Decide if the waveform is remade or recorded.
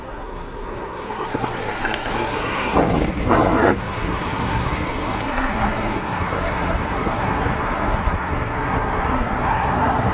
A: remade